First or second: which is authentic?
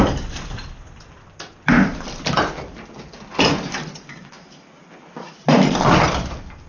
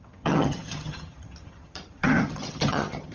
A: first